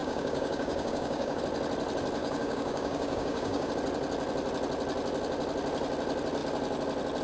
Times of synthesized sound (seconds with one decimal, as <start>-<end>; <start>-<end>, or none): 0.0-1.4; 2.2-3.7